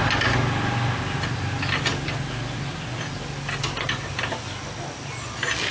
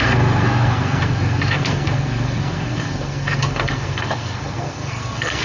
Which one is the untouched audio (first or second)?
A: first